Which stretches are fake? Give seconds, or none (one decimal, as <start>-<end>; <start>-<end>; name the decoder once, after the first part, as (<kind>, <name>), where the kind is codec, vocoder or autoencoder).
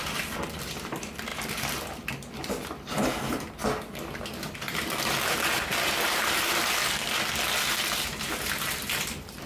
0.0-6.8 (vocoder, BigVGAN v2); 8.5-9.5